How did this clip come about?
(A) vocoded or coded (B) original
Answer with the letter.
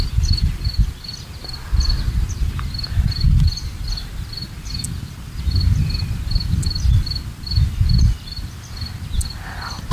B